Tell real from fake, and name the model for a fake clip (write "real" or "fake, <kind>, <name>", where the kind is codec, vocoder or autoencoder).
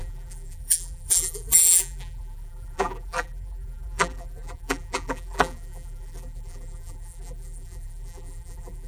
fake, vocoder, BigVGAN v2